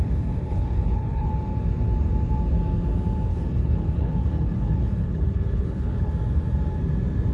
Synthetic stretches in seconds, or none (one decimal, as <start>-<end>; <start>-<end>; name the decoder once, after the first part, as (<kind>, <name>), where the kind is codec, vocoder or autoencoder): 0.5-1.3 (codec, HILCodec); 3.3-6.1